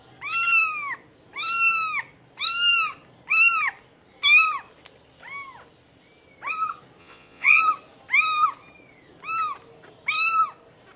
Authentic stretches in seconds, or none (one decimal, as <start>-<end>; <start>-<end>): 0.0-7.0; 7.6-11.0